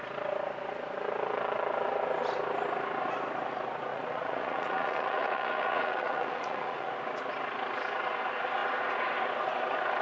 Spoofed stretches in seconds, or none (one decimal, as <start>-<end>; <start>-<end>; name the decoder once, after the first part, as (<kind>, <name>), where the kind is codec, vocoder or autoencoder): 3.9-6.9 (vocoder, Vocos)